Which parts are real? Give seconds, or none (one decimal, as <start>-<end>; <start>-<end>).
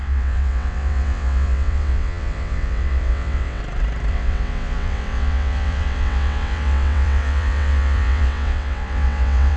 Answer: 3.6-4.1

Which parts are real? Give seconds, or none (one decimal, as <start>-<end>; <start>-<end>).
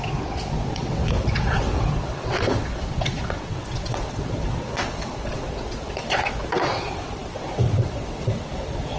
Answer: none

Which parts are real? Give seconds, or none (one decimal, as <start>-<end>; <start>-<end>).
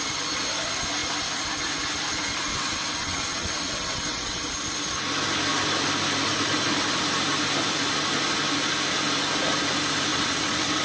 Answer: 0.0-2.5; 4.5-10.1